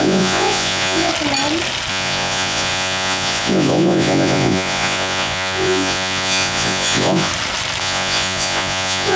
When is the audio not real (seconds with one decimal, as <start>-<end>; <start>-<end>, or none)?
0.0-1.1; 1.9-7.3; 7.8-9.2